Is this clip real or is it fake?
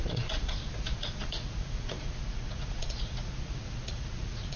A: fake